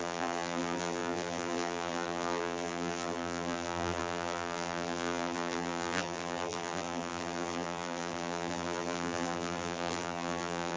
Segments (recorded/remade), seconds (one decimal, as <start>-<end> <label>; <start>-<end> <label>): 0.0-10.8 remade